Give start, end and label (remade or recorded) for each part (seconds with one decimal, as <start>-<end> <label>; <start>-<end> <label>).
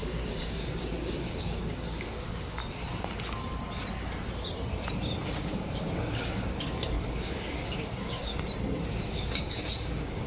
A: 0.0-2.6 remade; 2.6-5.4 recorded; 5.4-8.3 remade; 8.3-8.9 recorded; 8.9-10.3 remade